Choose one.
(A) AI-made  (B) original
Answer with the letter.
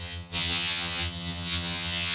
A